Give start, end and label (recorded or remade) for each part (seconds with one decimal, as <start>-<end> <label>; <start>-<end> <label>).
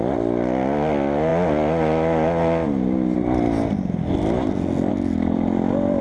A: 0.0-6.0 recorded